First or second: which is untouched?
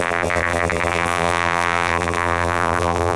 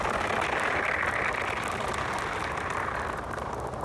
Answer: second